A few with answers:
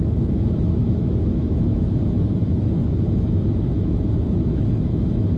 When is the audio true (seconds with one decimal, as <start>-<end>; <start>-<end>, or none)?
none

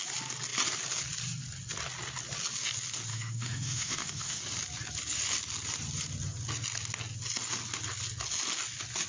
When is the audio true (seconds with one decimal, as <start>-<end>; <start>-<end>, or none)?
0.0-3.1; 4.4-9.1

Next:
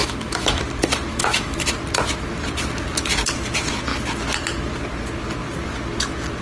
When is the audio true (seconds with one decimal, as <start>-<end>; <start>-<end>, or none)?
0.6-1.1; 1.7-6.4

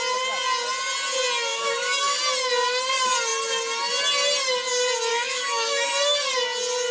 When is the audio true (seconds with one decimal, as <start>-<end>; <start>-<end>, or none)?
0.0-1.5; 2.2-5.1; 5.9-6.9

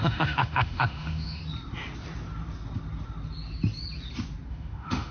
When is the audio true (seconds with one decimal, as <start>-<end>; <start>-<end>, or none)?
1.4-4.5

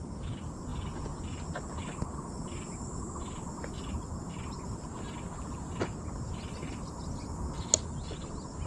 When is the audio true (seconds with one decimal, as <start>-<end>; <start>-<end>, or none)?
0.0-8.7

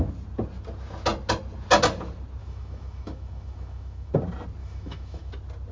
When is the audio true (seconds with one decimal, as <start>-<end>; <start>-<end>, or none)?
0.0-2.4; 4.1-4.6; 5.3-5.7

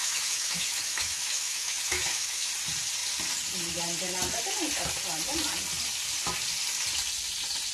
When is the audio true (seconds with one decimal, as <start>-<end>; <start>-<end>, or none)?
2.5-7.7